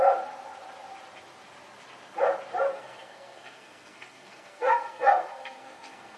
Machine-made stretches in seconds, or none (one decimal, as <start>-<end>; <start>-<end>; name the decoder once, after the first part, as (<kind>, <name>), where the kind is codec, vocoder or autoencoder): 2.7-6.2 (codec, SNAC)